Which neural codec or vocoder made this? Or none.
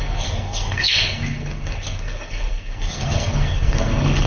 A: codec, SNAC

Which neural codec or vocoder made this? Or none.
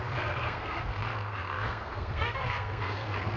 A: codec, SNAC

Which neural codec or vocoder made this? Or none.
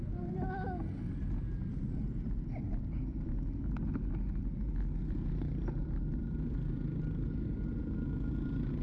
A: none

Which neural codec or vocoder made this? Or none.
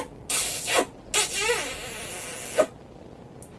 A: none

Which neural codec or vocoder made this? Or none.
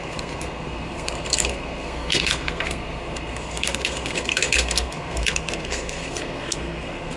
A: codec, SNAC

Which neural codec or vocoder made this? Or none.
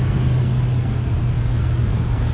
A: codec, SNAC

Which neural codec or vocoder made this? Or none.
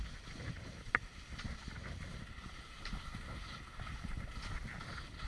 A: none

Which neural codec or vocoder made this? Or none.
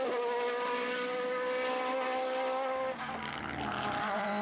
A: none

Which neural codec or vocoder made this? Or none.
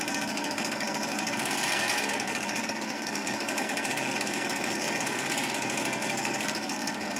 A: codec, SNAC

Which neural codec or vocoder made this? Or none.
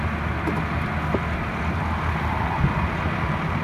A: none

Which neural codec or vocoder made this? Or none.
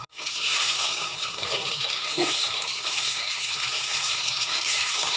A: codec, SNAC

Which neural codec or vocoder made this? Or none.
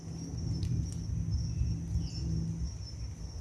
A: none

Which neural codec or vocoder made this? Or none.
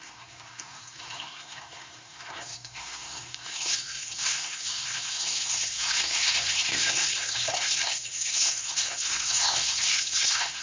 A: codec, SNAC